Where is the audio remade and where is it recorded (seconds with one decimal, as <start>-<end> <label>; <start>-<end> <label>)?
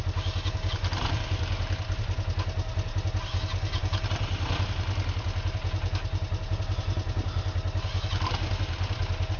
0.0-9.4 recorded